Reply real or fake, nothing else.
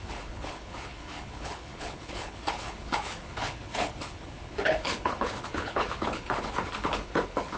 fake